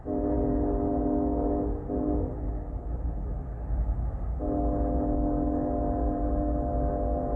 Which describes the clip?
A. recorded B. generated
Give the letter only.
A